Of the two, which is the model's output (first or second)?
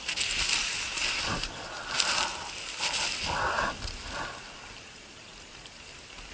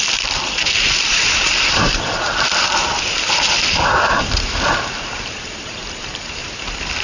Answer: second